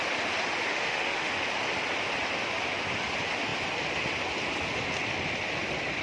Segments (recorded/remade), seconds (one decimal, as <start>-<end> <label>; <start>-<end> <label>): 0.0-0.7 recorded; 0.7-1.3 remade; 1.3-6.0 recorded